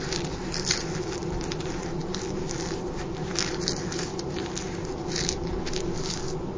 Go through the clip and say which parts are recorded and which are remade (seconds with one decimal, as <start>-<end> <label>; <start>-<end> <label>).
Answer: 0.0-6.6 recorded

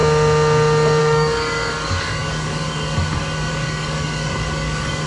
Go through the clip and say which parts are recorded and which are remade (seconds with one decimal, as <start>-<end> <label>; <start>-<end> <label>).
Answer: 0.0-1.0 recorded; 1.0-5.1 remade

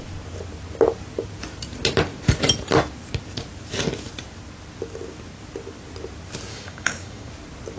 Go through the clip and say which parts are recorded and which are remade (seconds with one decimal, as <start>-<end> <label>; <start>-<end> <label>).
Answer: 0.0-6.5 recorded; 6.5-7.3 remade; 7.3-7.8 recorded

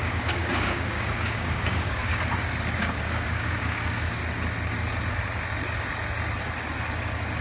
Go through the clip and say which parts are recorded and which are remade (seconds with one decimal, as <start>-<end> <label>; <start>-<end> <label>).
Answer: 0.0-2.1 remade; 2.1-2.8 recorded; 2.8-4.2 remade; 4.2-7.4 recorded

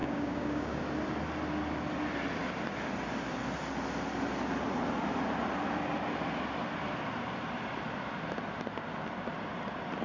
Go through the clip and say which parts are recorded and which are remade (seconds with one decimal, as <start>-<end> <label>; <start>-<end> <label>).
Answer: 0.0-0.8 remade; 0.8-10.0 recorded

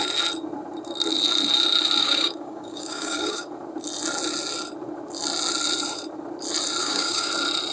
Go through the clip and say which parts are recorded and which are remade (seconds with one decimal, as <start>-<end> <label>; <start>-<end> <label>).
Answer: 0.0-2.0 recorded; 2.0-3.5 remade; 3.5-6.8 recorded; 6.8-7.3 remade; 7.3-7.7 recorded

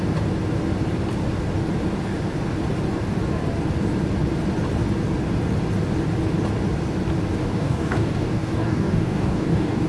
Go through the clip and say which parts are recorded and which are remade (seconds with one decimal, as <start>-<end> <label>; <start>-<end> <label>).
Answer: 0.0-7.4 recorded; 7.4-9.9 remade